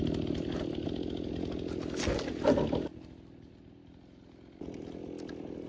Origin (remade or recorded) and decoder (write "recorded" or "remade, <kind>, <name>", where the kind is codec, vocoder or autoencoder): recorded